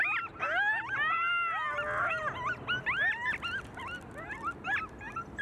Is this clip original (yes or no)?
yes